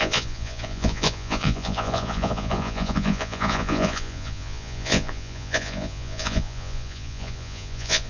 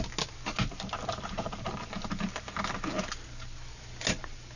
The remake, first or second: first